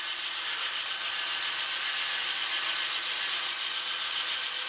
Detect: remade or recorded recorded